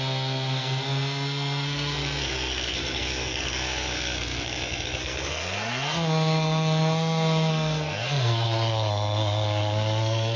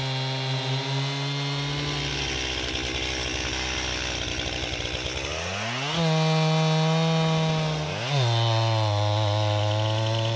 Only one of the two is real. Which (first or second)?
second